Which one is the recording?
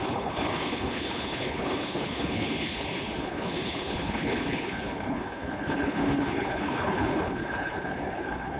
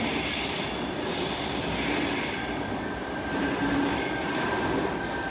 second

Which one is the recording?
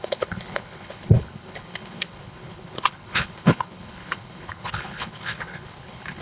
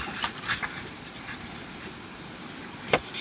second